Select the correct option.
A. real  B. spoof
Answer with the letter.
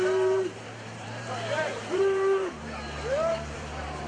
B